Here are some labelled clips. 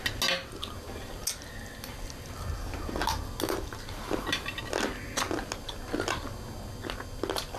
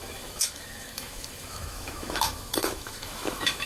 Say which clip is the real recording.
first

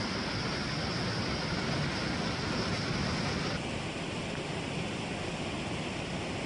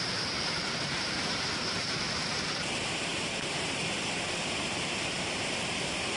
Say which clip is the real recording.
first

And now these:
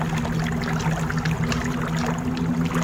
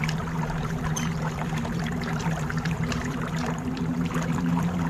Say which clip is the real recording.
first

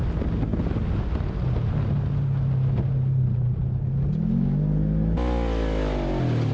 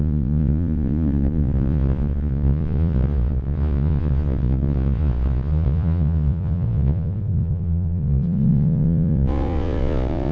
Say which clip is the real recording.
first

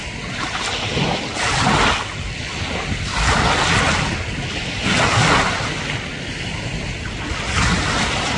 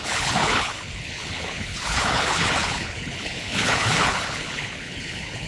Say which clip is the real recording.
first